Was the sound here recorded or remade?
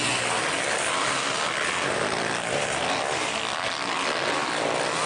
recorded